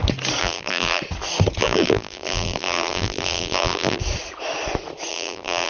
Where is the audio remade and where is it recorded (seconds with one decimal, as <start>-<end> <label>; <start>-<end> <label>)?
0.0-0.4 recorded; 0.4-1.0 remade; 1.0-1.6 recorded; 1.6-4.0 remade; 4.0-5.1 recorded; 5.1-5.7 remade